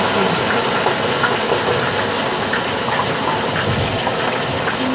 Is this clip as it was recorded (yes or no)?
yes